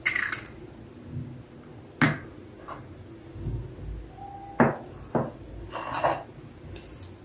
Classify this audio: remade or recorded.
recorded